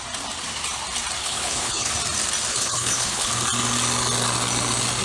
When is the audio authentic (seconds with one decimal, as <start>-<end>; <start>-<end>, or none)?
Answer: 0.0-1.2; 1.9-2.5; 3.3-5.0